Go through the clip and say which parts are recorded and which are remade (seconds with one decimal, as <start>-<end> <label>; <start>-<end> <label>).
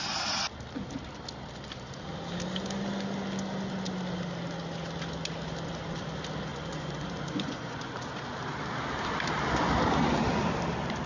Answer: 0.0-6.5 recorded; 6.5-7.9 remade; 7.9-11.1 recorded